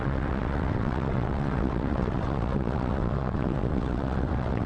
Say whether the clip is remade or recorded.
remade